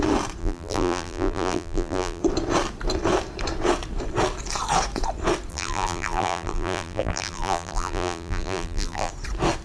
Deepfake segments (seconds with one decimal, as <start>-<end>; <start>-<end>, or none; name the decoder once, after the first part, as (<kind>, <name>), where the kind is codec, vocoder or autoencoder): 0.4-2.2 (vocoder, BigVGAN v2); 5.5-9.1